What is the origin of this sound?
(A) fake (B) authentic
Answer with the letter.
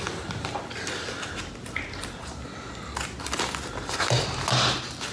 B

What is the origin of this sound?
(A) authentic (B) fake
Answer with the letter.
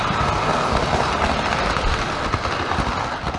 A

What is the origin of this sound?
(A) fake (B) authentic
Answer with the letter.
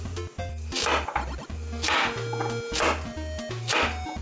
B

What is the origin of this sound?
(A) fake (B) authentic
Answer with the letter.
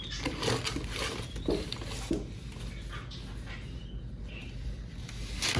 B